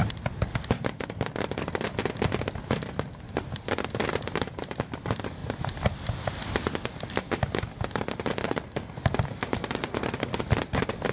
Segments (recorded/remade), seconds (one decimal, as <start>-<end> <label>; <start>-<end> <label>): 0.0-11.1 recorded